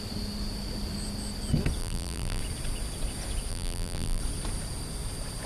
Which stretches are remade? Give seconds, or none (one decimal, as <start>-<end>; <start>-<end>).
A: 1.8-2.4; 3.5-4.2

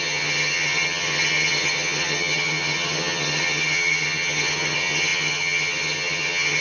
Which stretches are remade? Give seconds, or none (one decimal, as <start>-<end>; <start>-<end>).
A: 0.0-6.6

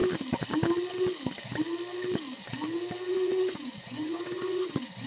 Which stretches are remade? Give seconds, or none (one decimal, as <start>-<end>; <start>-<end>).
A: 3.1-5.1